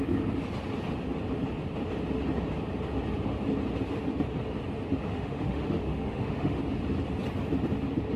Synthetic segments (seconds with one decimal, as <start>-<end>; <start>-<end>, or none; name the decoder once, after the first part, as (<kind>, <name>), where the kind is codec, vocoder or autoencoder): 5.1-6.6 (autoencoder, DAC-VAE)